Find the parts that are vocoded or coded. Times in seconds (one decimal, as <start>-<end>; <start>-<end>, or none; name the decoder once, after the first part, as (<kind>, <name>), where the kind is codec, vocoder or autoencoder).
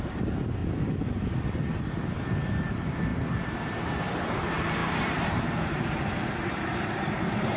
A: 0.0-0.6 (vocoder, BigVGAN v2); 1.8-7.6